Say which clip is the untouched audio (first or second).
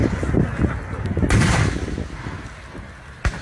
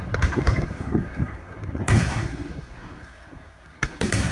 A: first